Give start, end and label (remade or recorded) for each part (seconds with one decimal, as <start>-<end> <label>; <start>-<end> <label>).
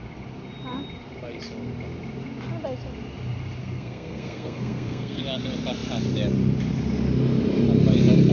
0.0-3.6 recorded; 3.6-5.2 remade; 5.2-8.3 recorded